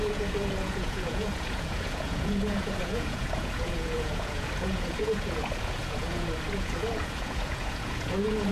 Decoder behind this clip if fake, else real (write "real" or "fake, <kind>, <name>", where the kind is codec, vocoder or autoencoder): fake, vocoder, Vocos